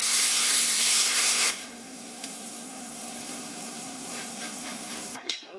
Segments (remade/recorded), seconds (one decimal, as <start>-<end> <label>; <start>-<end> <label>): 0.0-5.6 remade